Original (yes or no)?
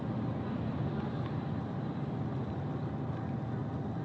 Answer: yes